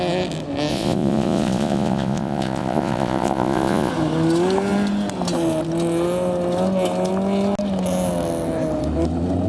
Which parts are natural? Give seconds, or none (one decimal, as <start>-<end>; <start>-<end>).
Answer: 0.0-0.7; 3.9-9.5